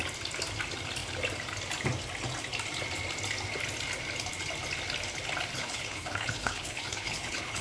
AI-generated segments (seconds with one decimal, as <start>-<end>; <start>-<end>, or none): 5.5-7.6